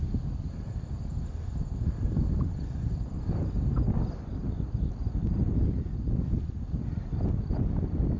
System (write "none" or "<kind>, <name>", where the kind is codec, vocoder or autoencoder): none